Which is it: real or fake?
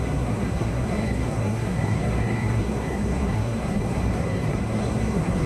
fake